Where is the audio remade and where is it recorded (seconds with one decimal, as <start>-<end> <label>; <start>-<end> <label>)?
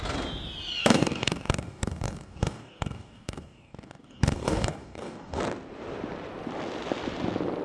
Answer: 0.0-0.8 recorded; 0.8-5.4 remade; 5.4-7.6 recorded